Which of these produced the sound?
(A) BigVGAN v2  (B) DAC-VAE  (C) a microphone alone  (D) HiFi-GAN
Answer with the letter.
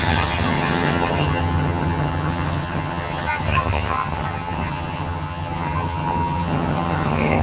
D